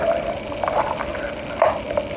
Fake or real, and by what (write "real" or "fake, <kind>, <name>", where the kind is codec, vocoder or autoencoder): real